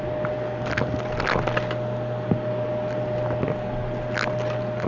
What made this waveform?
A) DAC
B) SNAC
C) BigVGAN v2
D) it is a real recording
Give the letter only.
D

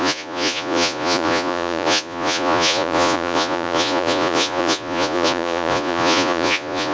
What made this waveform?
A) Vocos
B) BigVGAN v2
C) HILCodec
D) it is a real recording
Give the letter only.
A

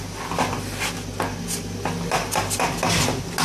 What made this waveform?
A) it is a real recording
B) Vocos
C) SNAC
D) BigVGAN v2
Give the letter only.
A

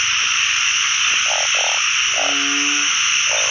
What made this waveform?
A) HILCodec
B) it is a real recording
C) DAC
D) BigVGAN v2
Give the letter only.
B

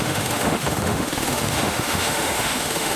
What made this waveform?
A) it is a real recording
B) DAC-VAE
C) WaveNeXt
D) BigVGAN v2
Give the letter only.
B